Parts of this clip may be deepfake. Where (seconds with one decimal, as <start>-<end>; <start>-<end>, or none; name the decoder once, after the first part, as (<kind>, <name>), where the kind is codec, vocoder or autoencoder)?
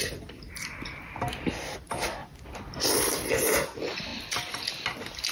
0.0-0.9 (vocoder, BigVGAN v2); 1.5-2.2; 2.9-4.1